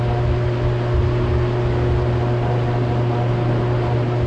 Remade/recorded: recorded